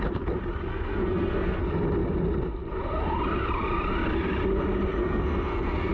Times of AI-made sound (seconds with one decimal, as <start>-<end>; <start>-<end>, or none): 0.7-1.6; 5.0-5.9